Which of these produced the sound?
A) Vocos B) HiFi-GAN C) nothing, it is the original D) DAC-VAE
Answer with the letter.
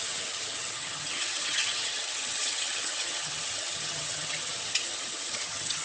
B